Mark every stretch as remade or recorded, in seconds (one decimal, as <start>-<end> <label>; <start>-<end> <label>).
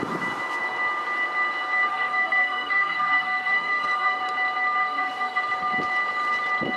0.0-1.9 recorded; 1.9-4.2 remade; 4.2-4.8 recorded; 4.8-5.4 remade; 5.4-6.8 recorded